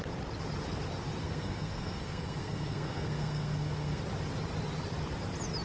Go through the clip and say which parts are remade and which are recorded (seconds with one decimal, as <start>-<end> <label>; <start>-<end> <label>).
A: 0.0-1.2 recorded; 1.2-4.0 remade; 4.0-5.6 recorded